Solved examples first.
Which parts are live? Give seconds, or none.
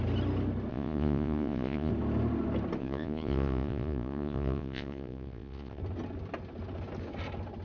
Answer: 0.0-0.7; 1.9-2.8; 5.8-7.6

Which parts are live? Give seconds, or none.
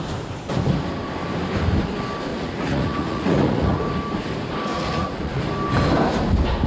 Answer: 0.0-2.3; 3.8-4.7; 5.4-6.7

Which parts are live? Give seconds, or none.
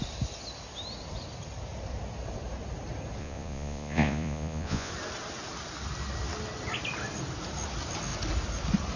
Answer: 0.0-3.2; 4.9-9.0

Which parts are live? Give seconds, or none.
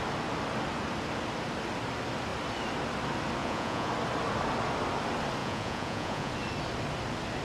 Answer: 0.0-3.4; 3.9-5.4; 6.3-7.4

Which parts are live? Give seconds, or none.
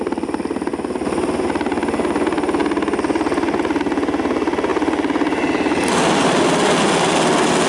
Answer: 0.0-7.7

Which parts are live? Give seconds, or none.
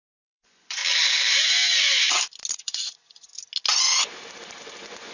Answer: 0.8-2.5; 3.3-4.6